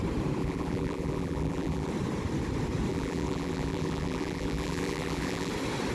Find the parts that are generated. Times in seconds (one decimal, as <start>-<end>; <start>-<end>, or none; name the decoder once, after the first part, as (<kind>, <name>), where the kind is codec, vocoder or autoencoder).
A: 0.4-1.9 (vocoder, BigVGAN v2); 2.9-5.5